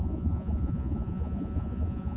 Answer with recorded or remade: remade